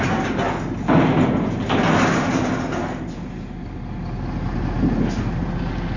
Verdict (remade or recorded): recorded